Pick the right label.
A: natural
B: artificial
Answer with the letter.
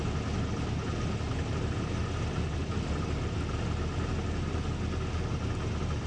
A